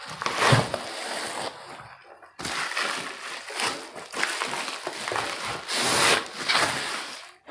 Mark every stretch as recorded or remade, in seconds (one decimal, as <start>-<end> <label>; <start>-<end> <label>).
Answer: 0.0-7.5 recorded